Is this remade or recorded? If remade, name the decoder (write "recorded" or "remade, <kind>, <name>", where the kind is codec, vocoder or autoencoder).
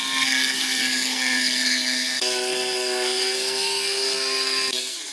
remade, codec, SNAC